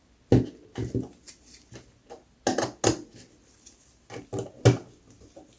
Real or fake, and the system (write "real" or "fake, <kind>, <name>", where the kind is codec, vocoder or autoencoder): real